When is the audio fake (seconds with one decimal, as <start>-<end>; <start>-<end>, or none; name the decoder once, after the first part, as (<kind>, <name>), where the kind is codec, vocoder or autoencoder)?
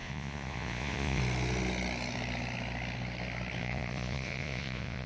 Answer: 0.0-1.2 (vocoder, Vocos); 3.6-5.1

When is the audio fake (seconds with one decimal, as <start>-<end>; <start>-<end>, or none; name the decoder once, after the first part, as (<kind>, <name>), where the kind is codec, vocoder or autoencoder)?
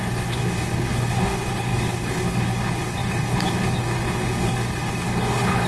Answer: 0.0-5.7 (codec, HILCodec)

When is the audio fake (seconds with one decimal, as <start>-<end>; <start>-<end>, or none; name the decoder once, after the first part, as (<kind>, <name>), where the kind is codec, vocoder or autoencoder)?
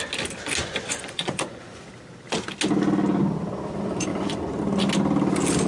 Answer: 0.6-1.9 (vocoder, Vocos); 4.1-4.6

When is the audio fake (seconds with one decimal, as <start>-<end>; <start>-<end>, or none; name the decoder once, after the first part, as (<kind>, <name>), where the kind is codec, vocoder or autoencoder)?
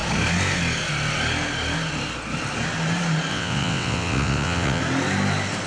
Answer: 3.3-4.8 (vocoder, WaveNeXt)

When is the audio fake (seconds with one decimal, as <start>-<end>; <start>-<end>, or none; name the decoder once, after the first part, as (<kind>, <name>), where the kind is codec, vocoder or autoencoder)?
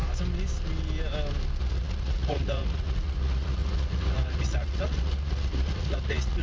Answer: 1.6-6.4 (vocoder, Vocos)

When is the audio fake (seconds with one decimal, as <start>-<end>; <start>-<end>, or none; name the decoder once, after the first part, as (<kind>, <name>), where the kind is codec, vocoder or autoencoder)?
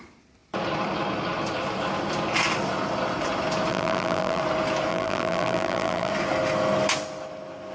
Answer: 3.7-4.4 (vocoder, BigVGAN v2); 4.9-6.1